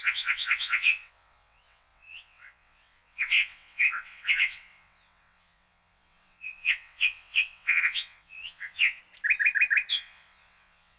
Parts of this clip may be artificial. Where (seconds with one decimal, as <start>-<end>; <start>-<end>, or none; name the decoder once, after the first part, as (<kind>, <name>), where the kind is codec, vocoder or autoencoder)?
0.0-9.0 (vocoder, WaveNeXt); 9.9-11.0